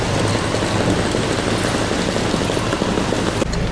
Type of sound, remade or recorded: recorded